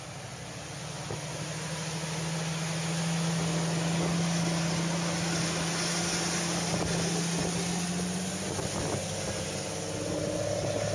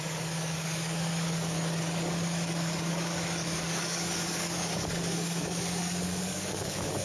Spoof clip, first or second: second